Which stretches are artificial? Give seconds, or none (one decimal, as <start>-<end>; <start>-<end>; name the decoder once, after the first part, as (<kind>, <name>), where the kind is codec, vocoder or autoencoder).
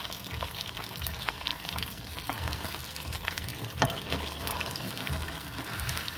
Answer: 0.0-6.2 (codec, SNAC)